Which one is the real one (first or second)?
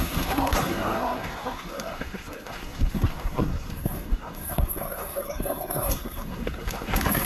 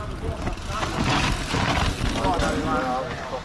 second